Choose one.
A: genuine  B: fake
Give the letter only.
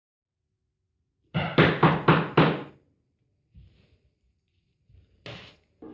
A